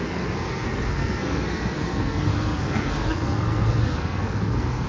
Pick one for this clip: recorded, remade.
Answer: remade